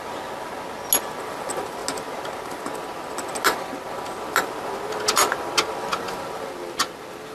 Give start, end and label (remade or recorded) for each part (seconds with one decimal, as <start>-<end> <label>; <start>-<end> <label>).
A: 0.0-7.3 recorded